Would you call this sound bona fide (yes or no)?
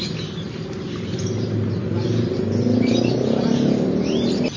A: yes